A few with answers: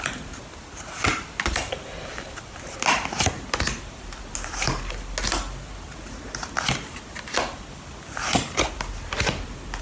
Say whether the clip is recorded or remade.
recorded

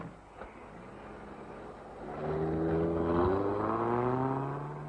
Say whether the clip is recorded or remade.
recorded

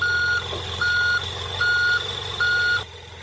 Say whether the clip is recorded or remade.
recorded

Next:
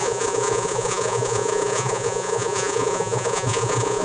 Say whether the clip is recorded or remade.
remade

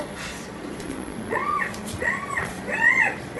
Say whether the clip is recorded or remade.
remade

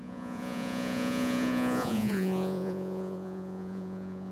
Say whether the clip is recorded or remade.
remade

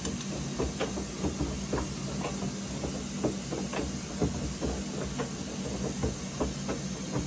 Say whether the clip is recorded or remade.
recorded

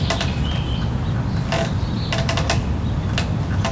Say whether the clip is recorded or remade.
recorded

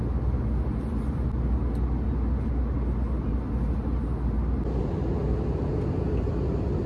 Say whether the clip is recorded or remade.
recorded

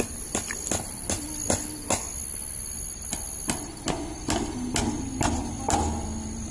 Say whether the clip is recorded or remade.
recorded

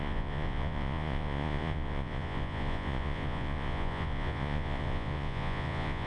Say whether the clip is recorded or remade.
remade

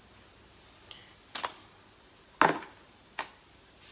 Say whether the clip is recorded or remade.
recorded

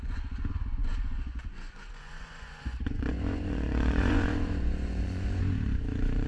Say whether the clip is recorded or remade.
remade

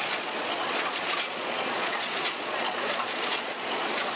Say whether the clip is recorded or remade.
remade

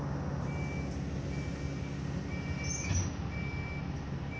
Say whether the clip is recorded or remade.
recorded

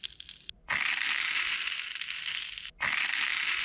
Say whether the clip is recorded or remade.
recorded